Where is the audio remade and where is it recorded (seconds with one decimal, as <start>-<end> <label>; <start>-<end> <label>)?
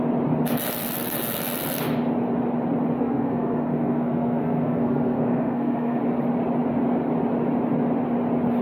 0.0-3.0 recorded; 3.0-6.0 remade; 6.0-8.6 recorded